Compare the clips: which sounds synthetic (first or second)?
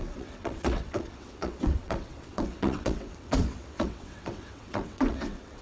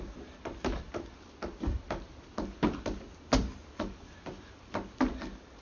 first